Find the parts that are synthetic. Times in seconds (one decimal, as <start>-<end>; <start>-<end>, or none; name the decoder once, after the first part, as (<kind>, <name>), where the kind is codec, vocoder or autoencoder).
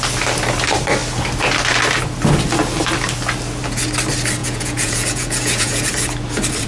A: 4.4-5.9 (vocoder, Vocos)